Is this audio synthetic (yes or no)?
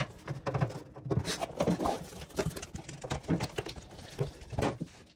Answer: no